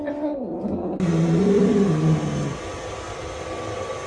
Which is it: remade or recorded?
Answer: recorded